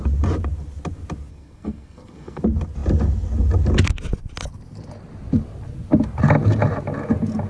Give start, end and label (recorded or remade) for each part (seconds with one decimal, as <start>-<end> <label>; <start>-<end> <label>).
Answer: 0.0-1.3 recorded; 1.3-2.4 remade; 2.4-7.5 recorded